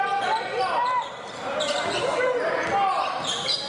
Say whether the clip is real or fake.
real